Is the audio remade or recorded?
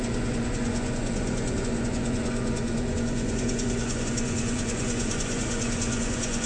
remade